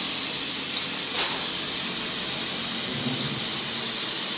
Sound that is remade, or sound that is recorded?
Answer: recorded